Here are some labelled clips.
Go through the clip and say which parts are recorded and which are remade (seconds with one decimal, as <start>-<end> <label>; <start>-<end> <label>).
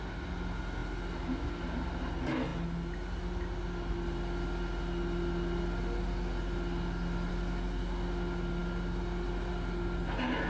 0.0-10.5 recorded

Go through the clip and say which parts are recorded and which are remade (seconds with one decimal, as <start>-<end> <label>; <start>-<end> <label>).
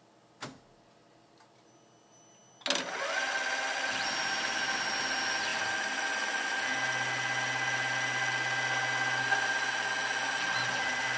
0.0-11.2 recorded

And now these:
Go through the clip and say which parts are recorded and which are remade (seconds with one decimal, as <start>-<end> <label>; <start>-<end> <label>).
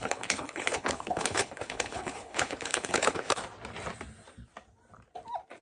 0.0-3.4 remade; 3.4-5.6 recorded